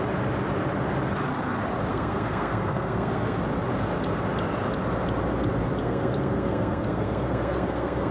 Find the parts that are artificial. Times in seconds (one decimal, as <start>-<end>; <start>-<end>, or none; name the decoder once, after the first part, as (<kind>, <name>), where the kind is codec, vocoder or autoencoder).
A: 1.9-3.4 (codec, SNAC); 5.8-8.1